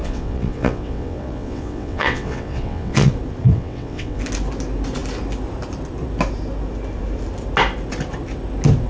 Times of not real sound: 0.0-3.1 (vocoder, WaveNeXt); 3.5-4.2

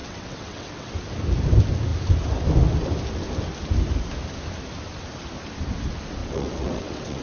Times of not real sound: 0.0-0.9 (vocoder, WaveNeXt); 6.2-7.2

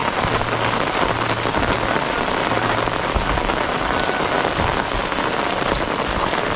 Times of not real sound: none

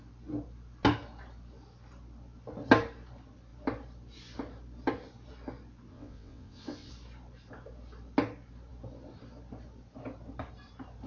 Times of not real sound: 5.9-6.9 (vocoder, WaveNeXt)